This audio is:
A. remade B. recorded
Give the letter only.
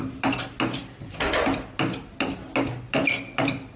B